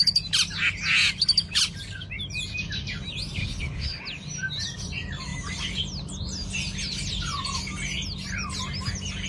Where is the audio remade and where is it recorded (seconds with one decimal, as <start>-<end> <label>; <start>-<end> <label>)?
0.0-3.4 recorded; 3.4-4.0 remade; 4.0-9.3 recorded